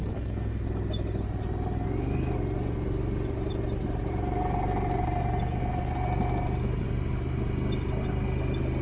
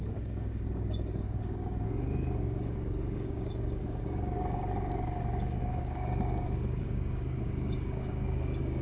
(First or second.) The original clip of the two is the first